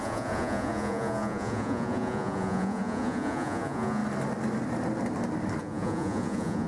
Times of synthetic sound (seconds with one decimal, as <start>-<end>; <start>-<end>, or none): 0.0-4.0; 5.6-6.7